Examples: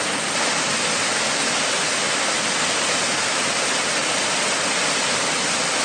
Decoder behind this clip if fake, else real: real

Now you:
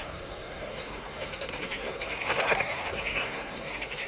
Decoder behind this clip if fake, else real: fake, codec, SNAC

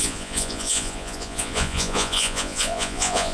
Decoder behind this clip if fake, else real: fake, vocoder, Vocos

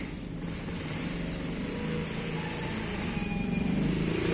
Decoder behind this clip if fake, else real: real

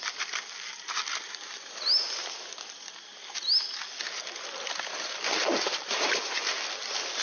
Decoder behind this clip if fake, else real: real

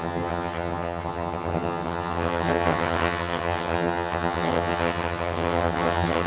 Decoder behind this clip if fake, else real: fake, vocoder, HiFi-GAN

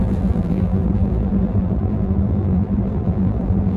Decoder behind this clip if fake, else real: fake, vocoder, BigVGAN v2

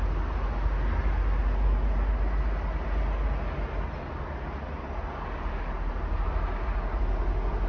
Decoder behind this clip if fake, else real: real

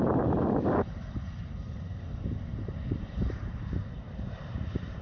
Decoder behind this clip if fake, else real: fake, vocoder, BigVGAN v2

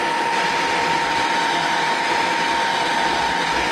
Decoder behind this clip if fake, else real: real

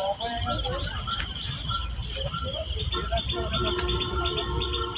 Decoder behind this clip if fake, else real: fake, vocoder, BigVGAN v2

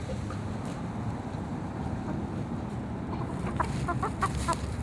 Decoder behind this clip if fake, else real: real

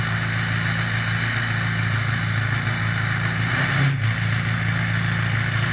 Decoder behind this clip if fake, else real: real